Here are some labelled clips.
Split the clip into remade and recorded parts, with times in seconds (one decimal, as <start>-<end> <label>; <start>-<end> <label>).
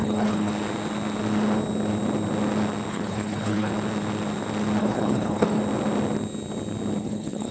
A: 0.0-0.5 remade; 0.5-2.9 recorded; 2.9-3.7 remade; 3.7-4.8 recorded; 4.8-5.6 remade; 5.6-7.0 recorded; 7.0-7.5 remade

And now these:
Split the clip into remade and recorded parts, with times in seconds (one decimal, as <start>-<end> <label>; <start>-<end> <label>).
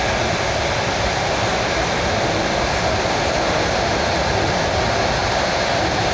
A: 0.0-6.1 recorded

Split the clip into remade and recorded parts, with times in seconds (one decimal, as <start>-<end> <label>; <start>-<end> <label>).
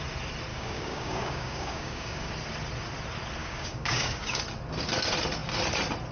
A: 0.0-0.5 recorded; 0.5-2.3 remade; 2.3-3.4 recorded; 3.4-4.4 remade; 4.4-6.1 recorded